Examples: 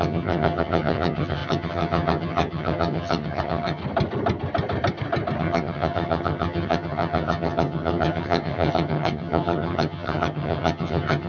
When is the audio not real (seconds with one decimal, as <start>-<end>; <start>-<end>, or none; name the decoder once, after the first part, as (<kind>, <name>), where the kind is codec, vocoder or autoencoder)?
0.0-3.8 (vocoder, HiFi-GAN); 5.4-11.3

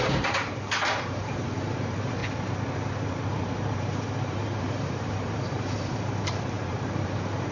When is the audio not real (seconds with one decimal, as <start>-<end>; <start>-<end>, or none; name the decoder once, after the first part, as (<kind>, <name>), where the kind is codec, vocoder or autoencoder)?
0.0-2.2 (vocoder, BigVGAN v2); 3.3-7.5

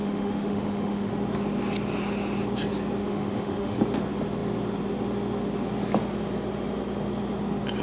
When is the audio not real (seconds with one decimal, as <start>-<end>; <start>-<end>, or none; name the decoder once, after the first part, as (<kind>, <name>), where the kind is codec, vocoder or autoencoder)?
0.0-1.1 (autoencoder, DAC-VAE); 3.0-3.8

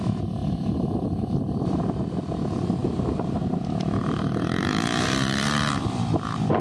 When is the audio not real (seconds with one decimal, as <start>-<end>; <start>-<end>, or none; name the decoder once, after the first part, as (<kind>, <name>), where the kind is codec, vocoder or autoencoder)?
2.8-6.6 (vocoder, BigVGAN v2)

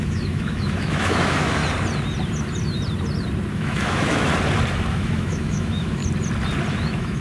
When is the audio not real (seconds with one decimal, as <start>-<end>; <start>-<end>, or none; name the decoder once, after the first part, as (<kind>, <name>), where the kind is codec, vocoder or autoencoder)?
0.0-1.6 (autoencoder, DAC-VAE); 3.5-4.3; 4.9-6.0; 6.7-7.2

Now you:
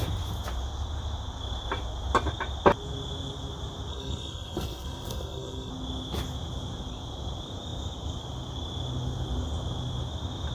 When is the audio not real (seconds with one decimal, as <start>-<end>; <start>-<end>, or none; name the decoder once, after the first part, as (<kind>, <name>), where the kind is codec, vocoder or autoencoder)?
3.9-5.7 (codec, SNAC)

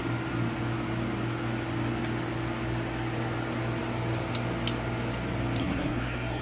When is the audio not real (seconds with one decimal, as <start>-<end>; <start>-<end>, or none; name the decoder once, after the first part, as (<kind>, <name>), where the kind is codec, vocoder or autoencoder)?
5.6-6.4 (codec, SNAC)